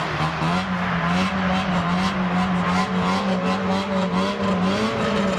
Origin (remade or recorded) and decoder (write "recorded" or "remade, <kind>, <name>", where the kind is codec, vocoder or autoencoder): recorded